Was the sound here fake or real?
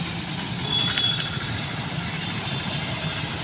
real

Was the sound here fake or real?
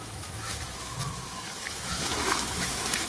fake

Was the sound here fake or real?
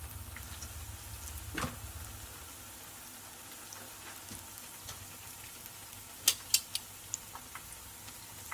real